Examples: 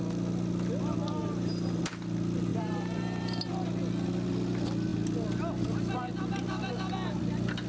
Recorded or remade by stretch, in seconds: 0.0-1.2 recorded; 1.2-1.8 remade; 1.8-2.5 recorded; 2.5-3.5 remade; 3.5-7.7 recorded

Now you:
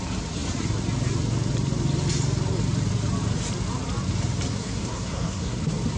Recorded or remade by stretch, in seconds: 0.0-4.5 recorded; 4.5-5.6 remade; 5.6-6.0 recorded

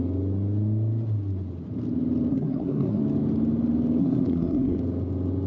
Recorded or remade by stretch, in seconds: 0.0-2.3 recorded; 2.3-3.0 remade; 3.0-4.0 recorded; 4.0-4.8 remade; 4.8-5.5 recorded

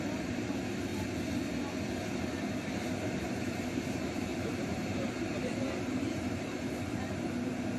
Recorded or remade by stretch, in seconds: 0.0-0.9 remade; 0.9-3.2 recorded; 3.2-7.8 remade

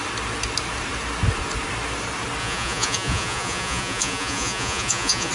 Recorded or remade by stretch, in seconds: 0.0-2.4 recorded; 2.4-5.3 remade